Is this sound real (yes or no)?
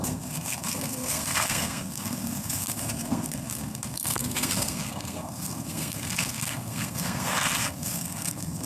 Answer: no